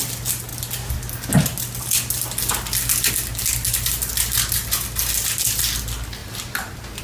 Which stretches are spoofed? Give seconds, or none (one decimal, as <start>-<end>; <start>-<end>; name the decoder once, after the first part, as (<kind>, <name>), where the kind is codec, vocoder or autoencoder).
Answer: none